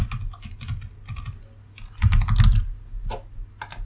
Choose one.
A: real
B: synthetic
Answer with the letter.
A